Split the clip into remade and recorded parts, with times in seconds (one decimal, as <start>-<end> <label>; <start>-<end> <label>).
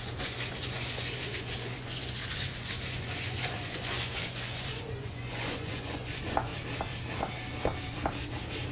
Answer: 0.0-6.5 remade; 6.5-8.7 recorded